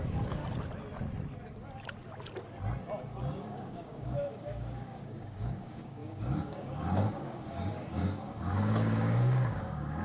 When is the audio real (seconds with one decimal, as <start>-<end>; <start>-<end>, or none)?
0.4-3.4